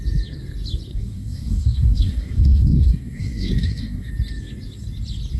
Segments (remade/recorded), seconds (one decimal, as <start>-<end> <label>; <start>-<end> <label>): 0.0-0.9 recorded; 0.9-4.1 remade; 4.1-5.4 recorded